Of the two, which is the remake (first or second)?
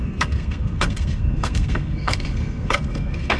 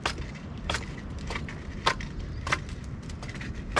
first